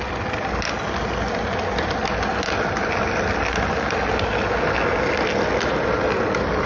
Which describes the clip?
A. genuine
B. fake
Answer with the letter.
A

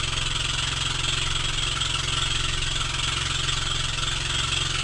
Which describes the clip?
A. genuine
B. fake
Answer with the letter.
A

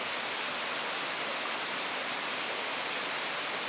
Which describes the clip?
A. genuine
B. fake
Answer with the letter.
A